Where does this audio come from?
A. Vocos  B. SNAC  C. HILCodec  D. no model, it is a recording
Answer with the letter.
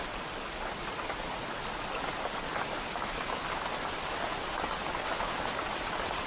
D